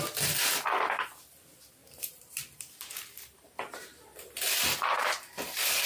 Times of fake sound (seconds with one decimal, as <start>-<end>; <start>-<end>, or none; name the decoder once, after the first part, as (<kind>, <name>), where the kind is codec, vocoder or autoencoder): 1.8-5.3 (vocoder, BigVGAN v2)